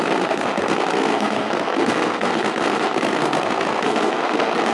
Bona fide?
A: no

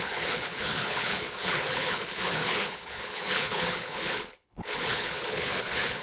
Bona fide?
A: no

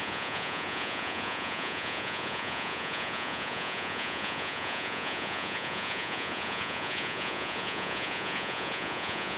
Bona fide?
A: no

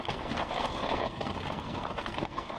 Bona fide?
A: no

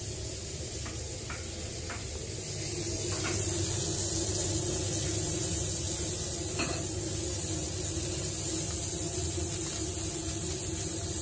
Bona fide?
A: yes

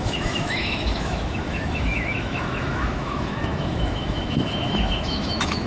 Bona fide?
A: no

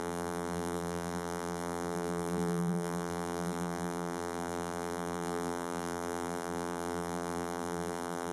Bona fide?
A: no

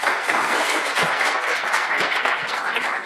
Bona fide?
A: no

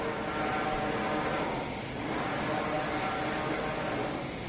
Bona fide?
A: yes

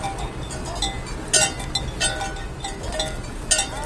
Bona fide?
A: yes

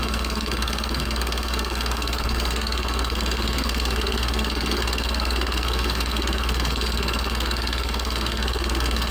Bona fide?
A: no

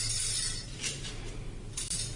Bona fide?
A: yes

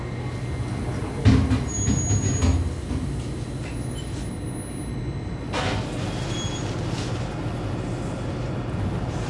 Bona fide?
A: yes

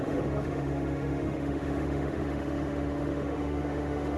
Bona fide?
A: no